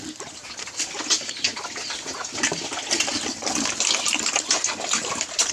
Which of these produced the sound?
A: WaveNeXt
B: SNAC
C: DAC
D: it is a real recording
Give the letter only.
D